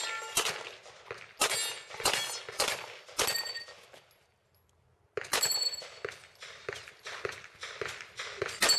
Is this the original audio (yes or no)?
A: yes